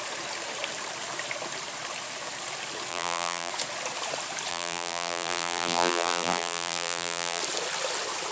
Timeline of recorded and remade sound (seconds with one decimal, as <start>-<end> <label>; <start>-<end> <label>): 0.0-2.9 recorded; 2.9-3.5 remade; 3.5-4.5 recorded; 4.5-7.4 remade; 7.4-8.3 recorded